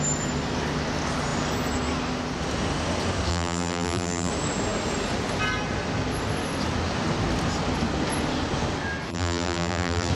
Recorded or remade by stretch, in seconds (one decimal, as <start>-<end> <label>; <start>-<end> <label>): 0.0-3.3 recorded; 3.3-4.3 remade; 4.3-9.1 recorded; 9.1-10.1 remade